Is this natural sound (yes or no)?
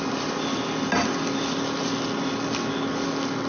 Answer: yes